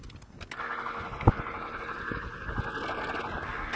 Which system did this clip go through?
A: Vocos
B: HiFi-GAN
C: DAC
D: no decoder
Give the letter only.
D